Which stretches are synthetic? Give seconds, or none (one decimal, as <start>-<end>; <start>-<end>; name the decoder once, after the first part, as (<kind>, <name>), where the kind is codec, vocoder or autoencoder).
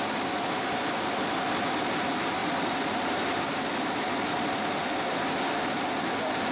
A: none